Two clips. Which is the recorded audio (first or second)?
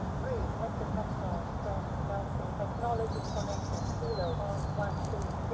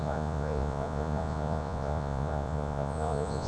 first